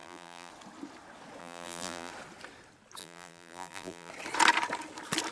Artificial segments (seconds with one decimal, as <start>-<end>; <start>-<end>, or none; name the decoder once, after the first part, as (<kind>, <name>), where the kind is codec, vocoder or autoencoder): 0.0-0.5 (vocoder, BigVGAN v2); 1.4-2.1; 3.0-4.1